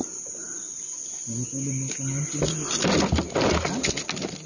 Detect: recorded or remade recorded